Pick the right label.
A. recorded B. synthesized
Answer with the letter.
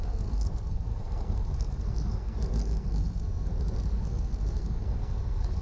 B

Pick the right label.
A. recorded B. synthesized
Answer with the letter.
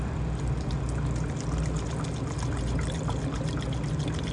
A